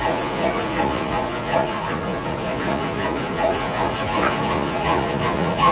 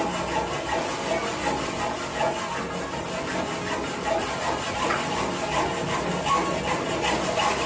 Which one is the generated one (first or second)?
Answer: first